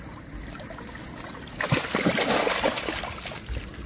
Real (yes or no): yes